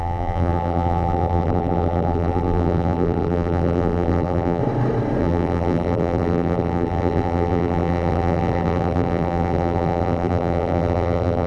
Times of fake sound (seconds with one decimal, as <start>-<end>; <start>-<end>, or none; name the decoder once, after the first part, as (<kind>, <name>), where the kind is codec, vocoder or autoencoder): 0.0-4.6 (vocoder, BigVGAN v2); 5.2-11.5